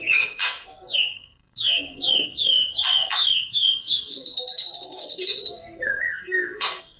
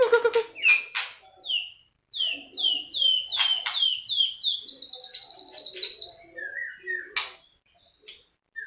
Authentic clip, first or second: second